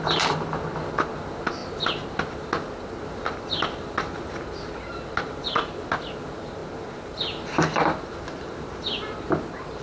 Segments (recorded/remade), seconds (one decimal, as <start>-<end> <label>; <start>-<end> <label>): 0.0-9.8 recorded